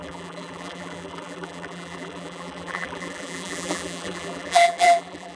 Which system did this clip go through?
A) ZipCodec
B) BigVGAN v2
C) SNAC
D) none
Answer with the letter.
B